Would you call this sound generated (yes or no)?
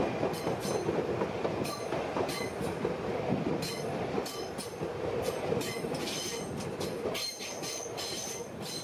no